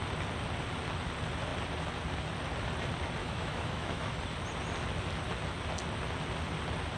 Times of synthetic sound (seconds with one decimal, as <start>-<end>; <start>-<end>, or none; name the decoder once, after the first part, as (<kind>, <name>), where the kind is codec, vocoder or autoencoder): 3.2-4.2 (autoencoder, DAC-VAE)